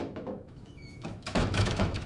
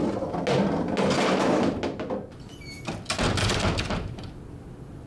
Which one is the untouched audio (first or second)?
second